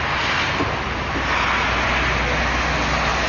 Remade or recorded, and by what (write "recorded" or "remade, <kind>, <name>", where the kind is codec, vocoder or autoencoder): recorded